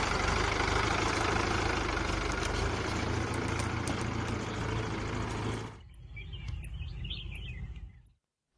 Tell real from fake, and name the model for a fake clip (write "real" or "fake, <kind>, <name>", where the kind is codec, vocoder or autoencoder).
real